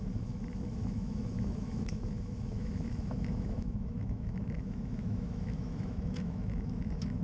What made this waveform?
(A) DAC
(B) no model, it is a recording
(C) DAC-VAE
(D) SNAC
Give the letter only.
C